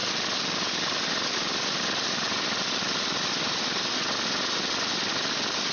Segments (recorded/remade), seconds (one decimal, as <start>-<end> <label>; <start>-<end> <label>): 0.0-5.7 recorded